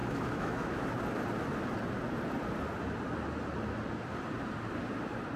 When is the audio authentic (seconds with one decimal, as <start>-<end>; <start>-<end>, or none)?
0.9-5.4